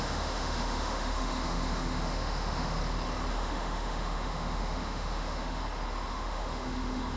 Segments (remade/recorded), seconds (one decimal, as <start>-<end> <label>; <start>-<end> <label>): 0.0-2.8 remade; 2.8-3.3 recorded; 3.3-5.6 remade; 5.6-6.1 recorded; 6.1-7.2 remade